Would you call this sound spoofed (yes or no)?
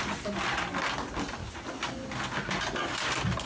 no